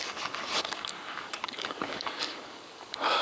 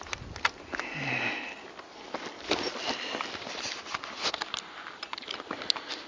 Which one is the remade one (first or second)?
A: first